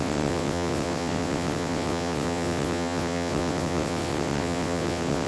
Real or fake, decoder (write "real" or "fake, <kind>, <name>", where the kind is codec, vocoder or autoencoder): fake, vocoder, WaveNeXt